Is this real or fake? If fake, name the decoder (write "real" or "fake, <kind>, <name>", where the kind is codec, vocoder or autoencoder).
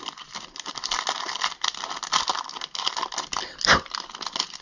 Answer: real